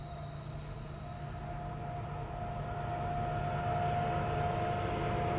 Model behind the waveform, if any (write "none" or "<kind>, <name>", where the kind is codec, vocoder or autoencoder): none